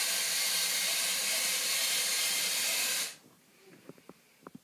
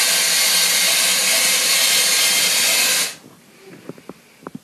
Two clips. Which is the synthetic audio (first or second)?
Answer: first